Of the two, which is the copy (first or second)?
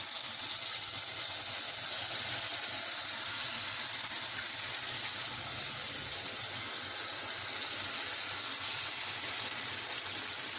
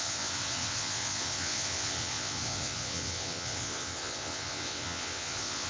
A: second